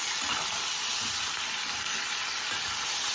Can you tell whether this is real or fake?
real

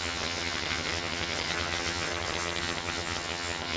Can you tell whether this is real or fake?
fake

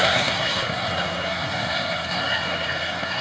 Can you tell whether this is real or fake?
fake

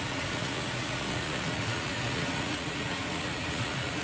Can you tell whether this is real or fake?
fake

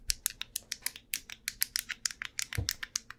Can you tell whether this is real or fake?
real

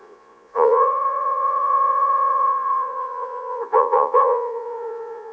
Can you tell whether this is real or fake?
fake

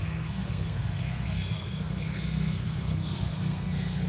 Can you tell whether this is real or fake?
fake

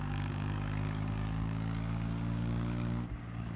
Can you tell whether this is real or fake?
fake